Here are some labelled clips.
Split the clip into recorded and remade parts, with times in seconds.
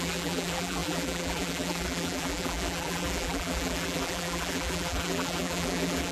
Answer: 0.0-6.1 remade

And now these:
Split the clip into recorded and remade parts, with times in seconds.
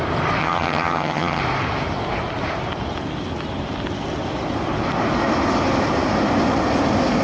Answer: 0.0-0.4 recorded; 0.4-1.4 remade; 1.4-7.2 recorded